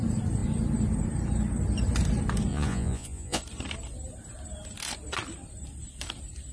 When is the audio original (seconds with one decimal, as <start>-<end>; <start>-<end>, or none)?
0.0-2.5; 3.4-6.5